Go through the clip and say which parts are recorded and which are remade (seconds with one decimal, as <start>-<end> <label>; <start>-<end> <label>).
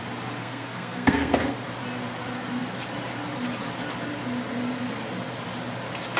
0.0-0.4 recorded; 0.4-1.6 remade; 1.6-6.2 recorded